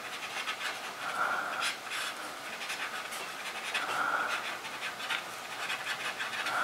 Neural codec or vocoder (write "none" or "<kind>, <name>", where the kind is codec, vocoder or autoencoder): none